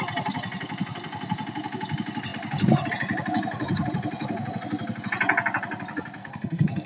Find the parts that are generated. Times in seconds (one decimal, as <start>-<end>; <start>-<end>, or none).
6.2-6.9